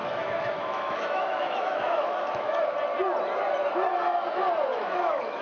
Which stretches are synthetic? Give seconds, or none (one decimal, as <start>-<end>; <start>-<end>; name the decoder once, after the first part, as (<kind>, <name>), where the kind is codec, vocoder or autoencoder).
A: 0.0-2.6 (autoencoder, DAC-VAE); 4.7-5.4